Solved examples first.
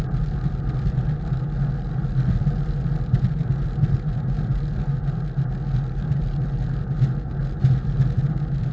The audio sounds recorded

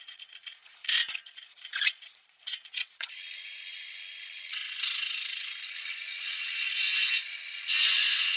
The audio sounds remade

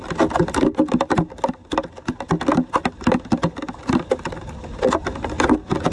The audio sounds recorded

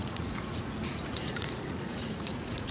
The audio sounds remade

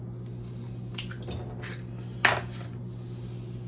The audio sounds recorded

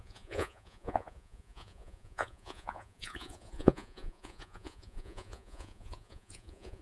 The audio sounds remade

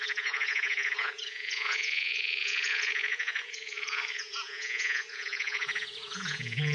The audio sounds remade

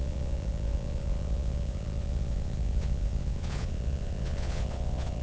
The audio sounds remade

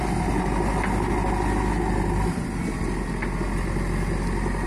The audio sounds recorded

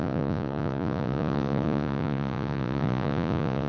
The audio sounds remade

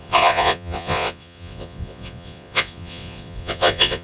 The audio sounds remade